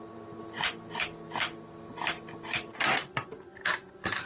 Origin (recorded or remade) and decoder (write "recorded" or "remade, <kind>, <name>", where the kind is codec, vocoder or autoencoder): remade, vocoder, BigVGAN v2